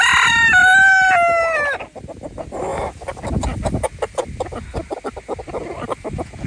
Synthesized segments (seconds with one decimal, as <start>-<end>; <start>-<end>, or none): none